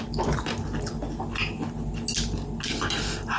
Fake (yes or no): no